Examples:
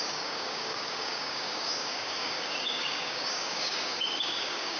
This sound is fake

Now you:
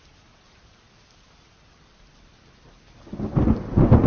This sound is real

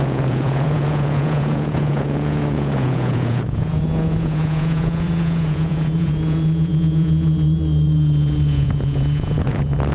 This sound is fake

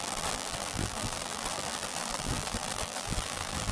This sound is fake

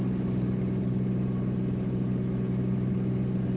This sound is real